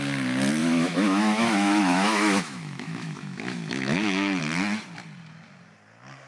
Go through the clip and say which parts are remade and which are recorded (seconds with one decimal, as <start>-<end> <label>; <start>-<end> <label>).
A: 0.0-0.6 recorded; 0.6-4.4 remade; 4.4-6.3 recorded